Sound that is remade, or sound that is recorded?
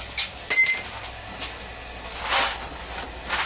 recorded